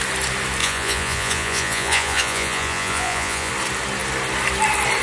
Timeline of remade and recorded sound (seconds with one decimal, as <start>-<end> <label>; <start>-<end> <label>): 0.0-0.6 recorded; 0.6-3.5 remade; 3.5-5.0 recorded